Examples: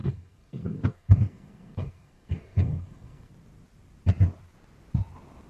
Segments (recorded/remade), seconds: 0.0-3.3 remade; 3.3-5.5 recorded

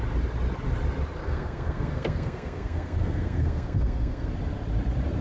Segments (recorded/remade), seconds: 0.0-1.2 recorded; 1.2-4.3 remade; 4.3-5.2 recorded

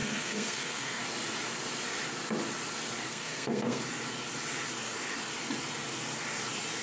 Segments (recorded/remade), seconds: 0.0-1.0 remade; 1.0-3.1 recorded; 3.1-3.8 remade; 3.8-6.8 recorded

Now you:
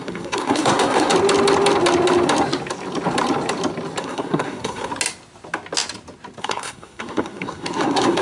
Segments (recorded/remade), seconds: 0.0-1.1 remade; 1.1-4.0 recorded; 4.0-4.9 remade; 4.9-6.4 recorded; 6.4-8.2 remade